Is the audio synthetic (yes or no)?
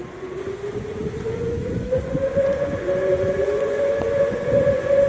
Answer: yes